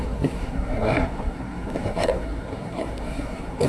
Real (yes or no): no